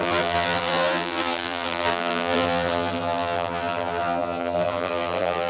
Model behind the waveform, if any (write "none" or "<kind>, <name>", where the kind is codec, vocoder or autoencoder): vocoder, BigVGAN v2